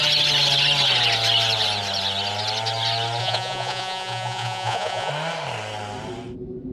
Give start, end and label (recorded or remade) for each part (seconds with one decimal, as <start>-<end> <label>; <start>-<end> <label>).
0.0-3.2 recorded; 3.2-5.1 remade; 5.1-6.7 recorded